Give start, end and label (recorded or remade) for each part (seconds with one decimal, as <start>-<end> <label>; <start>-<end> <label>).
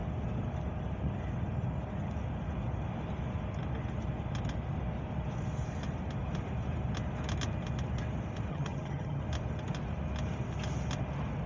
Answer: 0.0-8.5 recorded; 8.5-9.2 remade; 9.2-11.5 recorded